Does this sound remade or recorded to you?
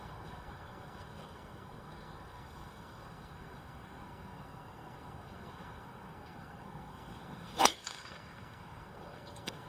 remade